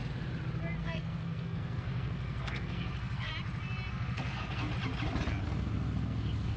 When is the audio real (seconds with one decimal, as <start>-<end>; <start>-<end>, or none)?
0.0-0.8; 3.3-3.9; 4.7-5.4